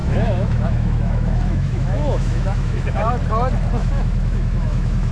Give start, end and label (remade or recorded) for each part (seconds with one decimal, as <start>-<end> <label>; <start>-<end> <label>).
0.0-3.1 remade; 3.1-3.8 recorded; 3.8-5.1 remade